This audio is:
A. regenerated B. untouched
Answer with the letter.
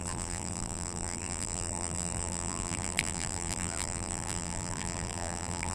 A